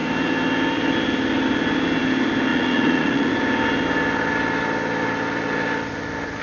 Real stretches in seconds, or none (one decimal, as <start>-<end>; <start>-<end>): 0.0-2.5; 3.3-6.4